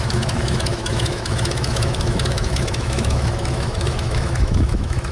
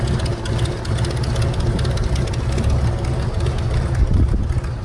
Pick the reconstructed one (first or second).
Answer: first